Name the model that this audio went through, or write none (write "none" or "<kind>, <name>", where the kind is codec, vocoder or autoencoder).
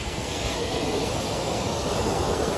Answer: codec, SNAC